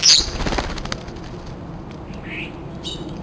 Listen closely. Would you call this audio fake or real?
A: real